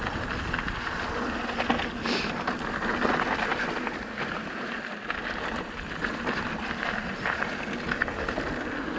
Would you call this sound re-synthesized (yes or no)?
no